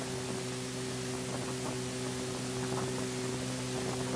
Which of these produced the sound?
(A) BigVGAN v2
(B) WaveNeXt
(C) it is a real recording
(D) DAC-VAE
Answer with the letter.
C